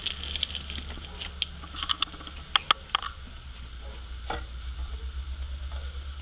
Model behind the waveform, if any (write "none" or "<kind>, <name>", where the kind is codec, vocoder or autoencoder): none